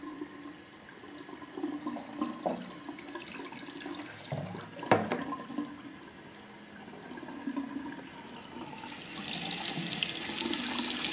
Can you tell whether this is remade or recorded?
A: recorded